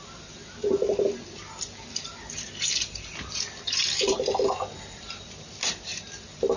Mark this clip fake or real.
real